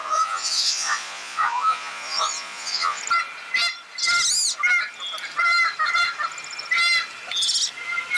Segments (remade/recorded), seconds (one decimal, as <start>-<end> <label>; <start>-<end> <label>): 0.0-3.0 remade; 3.0-8.2 recorded